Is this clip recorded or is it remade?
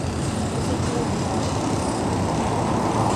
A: recorded